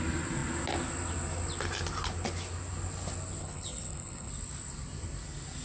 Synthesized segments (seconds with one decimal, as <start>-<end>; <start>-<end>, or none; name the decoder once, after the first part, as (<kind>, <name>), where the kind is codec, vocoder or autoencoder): 3.4-4.3 (codec, HILCodec)